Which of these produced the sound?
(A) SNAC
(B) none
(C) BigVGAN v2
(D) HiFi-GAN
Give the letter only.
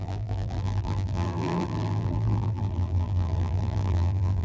C